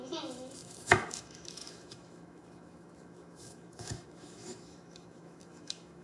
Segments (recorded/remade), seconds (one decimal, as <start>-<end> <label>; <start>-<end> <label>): 0.0-6.0 remade